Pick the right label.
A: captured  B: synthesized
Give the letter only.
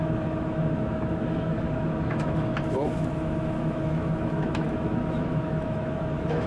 B